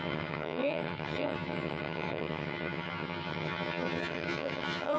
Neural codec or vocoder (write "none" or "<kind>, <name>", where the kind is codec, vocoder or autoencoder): vocoder, HiFi-GAN